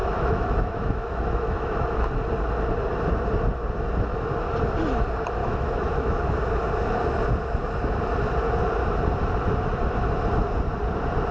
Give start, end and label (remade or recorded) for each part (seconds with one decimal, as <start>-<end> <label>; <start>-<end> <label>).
0.0-2.1 remade; 2.1-5.4 recorded; 5.4-6.2 remade; 6.2-11.3 recorded